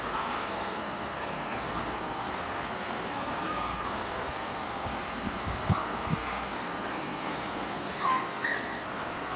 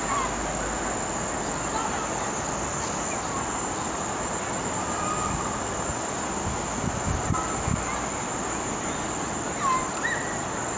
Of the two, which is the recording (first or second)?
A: second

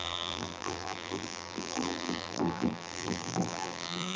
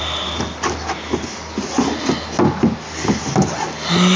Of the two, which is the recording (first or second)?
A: second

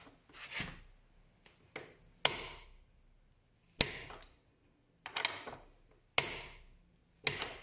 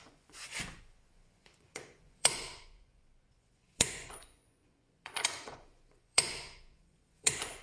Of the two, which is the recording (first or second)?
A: first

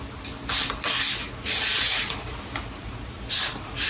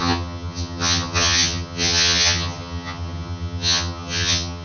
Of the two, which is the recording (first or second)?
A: first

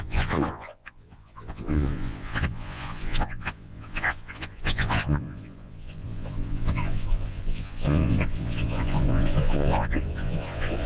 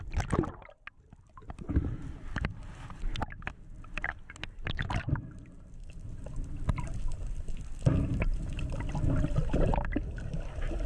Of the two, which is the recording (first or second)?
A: second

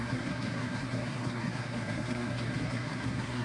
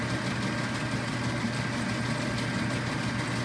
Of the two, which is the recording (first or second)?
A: second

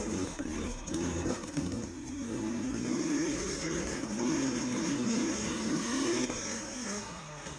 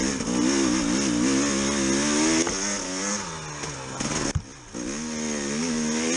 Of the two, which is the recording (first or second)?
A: second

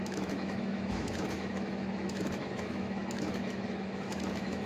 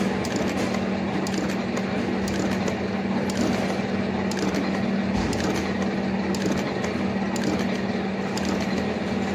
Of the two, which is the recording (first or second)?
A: second